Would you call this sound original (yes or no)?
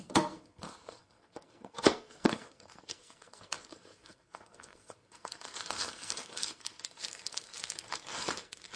no